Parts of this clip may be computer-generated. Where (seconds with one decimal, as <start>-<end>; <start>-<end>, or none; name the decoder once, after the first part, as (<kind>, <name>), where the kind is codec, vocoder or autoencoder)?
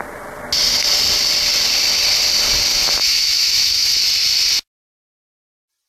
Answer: 2.7-4.0 (autoencoder, DAC-VAE)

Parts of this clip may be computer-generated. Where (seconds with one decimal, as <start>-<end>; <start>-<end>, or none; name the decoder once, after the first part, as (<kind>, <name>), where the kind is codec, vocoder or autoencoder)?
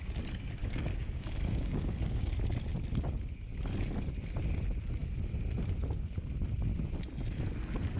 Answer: 0.6-2.3 (codec, DAC)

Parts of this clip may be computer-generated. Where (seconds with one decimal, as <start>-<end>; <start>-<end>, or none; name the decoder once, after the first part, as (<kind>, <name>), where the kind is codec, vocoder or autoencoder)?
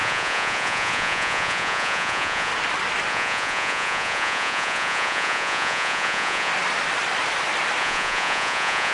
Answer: 0.0-2.5 (vocoder, Vocos); 3.1-6.5; 7.8-8.9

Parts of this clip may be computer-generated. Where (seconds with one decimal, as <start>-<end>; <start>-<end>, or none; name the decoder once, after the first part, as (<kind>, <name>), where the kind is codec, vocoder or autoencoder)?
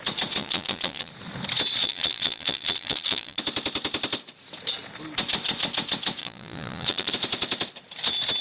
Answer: 0.4-1.1 (vocoder, Vocos); 1.8-3.4; 6.2-7.1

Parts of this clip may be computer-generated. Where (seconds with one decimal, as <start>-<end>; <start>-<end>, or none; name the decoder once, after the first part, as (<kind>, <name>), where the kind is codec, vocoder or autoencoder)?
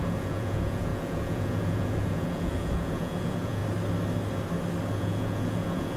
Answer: 0.0-3.6 (vocoder, Vocos); 4.9-6.0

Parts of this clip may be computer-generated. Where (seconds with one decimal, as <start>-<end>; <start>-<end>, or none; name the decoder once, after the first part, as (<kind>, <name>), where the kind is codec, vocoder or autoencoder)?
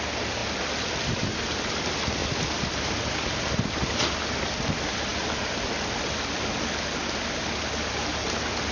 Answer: none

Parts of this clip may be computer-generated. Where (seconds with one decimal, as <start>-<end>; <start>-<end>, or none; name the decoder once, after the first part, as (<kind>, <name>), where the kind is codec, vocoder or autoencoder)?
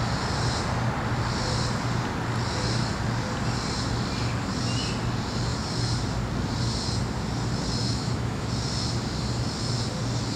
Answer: 7.8-8.5 (autoencoder, DAC-VAE)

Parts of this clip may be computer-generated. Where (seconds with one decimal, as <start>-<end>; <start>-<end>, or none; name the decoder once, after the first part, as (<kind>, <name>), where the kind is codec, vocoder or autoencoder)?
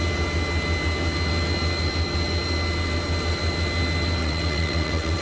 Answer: 4.2-5.2 (vocoder, WaveNeXt)